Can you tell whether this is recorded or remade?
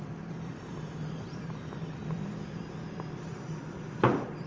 remade